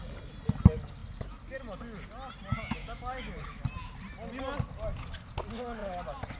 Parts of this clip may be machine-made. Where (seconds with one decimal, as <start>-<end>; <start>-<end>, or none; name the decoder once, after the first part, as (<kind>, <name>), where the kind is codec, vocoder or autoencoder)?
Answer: 2.8-3.6 (autoencoder, DAC-VAE)

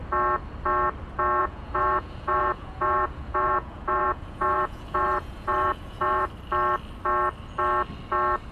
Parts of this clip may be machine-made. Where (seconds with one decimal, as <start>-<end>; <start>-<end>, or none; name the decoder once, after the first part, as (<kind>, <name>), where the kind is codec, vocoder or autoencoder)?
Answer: 1.4-6.3 (vocoder, Vocos)

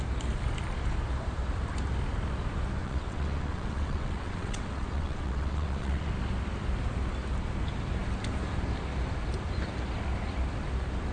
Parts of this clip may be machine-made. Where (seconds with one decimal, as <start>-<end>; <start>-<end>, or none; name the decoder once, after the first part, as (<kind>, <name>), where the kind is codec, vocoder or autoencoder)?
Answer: 2.8-6.1 (vocoder, WaveNeXt)

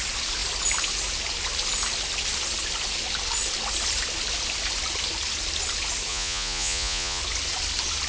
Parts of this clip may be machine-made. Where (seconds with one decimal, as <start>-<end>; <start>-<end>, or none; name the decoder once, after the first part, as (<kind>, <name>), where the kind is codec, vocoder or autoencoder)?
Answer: 6.1-7.2 (vocoder, Vocos)